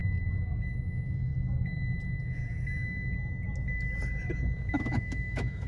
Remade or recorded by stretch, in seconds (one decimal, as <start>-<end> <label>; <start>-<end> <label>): 0.0-0.6 recorded; 0.6-1.3 remade; 1.3-4.7 recorded; 4.7-5.7 remade